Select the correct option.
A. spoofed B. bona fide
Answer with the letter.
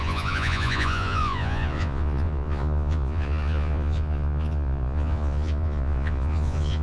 A